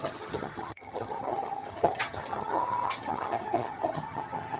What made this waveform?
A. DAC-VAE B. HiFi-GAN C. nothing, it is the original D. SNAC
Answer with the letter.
B